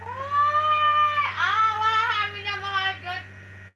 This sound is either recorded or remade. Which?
recorded